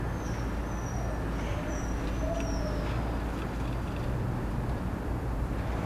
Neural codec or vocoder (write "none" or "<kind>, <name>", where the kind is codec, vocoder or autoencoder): none